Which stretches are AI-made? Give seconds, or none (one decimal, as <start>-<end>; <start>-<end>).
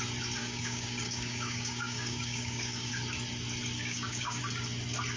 0.4-2.9; 3.8-4.4